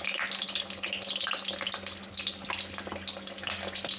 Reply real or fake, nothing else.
real